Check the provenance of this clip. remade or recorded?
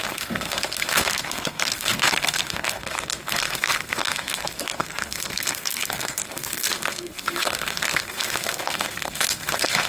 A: remade